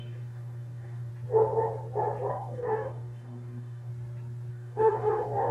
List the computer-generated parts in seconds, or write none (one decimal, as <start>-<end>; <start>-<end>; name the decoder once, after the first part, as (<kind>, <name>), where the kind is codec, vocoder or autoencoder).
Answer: 0.0-1.1 (codec, DAC); 2.3-3.9; 4.5-5.5